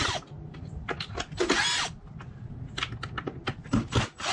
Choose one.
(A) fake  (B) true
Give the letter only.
B